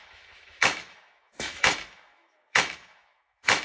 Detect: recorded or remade remade